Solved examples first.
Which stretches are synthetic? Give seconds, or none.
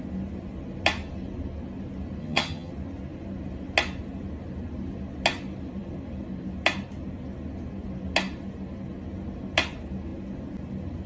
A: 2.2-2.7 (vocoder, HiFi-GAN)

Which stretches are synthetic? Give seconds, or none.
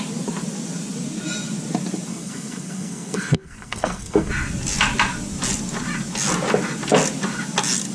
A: 2.1-4.3 (codec, SNAC)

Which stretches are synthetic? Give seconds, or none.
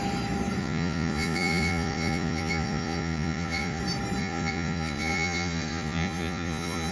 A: 0.6-3.8 (vocoder, Vocos); 4.2-6.9